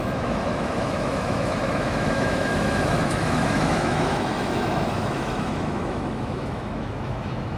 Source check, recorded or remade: remade